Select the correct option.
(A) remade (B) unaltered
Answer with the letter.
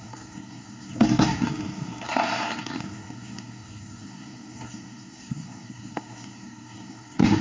A